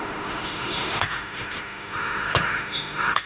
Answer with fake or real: fake